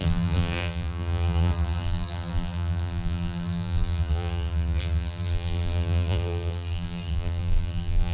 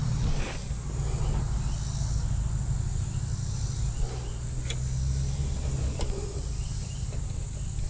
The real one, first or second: second